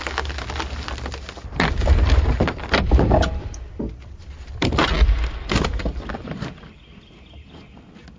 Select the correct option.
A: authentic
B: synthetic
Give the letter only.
A